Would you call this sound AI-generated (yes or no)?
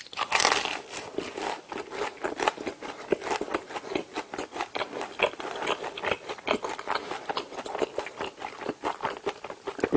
no